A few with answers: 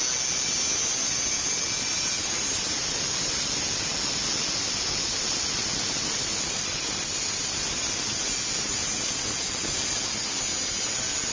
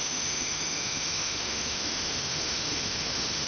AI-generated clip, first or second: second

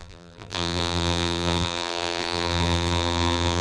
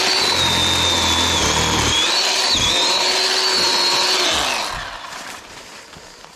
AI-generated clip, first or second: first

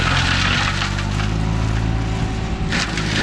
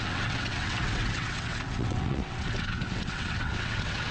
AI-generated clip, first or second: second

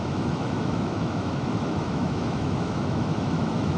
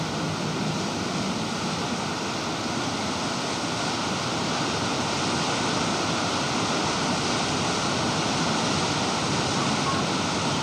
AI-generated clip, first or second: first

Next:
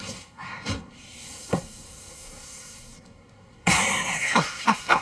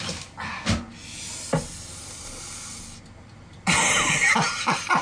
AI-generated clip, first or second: first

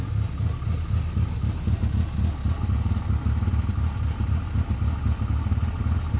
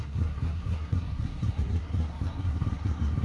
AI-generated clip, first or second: second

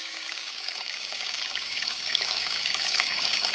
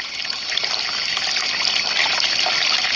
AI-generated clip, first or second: first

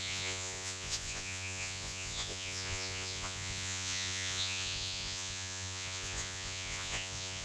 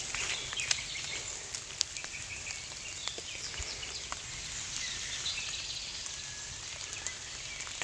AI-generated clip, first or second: first